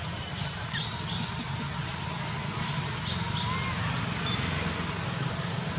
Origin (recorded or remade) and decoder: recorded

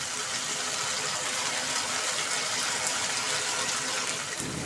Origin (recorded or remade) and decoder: recorded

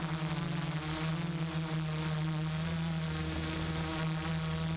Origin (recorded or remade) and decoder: recorded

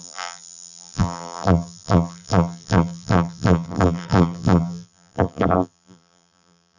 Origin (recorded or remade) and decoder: remade, vocoder, BigVGAN v2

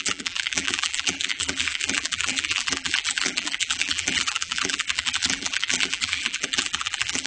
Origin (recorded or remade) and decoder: remade, vocoder, BigVGAN v2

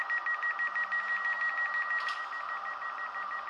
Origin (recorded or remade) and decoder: recorded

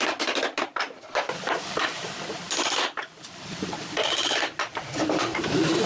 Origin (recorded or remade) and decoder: remade, vocoder, BigVGAN v2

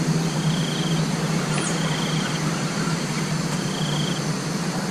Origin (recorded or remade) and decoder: remade, vocoder, BigVGAN v2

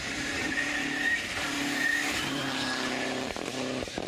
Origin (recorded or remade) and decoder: remade, vocoder, BigVGAN v2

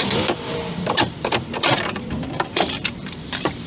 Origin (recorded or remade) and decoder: remade, vocoder, BigVGAN v2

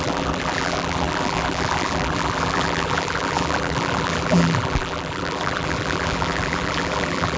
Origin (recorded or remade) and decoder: remade, vocoder, BigVGAN v2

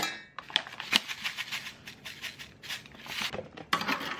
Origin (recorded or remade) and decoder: recorded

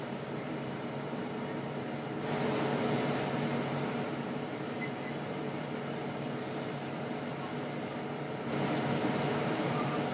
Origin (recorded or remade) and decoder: remade, vocoder, BigVGAN v2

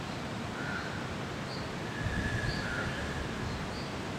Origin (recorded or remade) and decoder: recorded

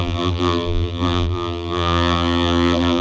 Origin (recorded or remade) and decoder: remade, vocoder, BigVGAN v2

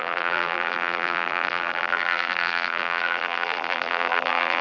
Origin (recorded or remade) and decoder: remade, vocoder, BigVGAN v2